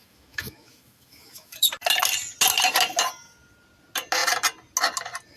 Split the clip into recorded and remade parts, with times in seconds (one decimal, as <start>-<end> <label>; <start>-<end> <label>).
0.0-1.7 remade; 1.7-5.4 recorded